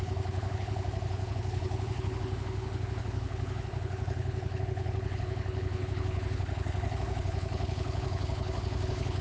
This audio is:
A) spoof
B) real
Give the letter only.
A